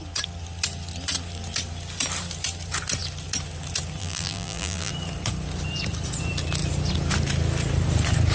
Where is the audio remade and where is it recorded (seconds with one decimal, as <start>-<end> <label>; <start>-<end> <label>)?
0.0-4.0 recorded; 4.0-4.9 remade; 4.9-8.3 recorded